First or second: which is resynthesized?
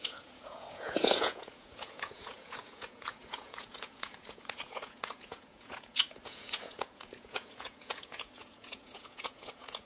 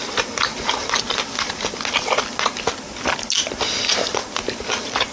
first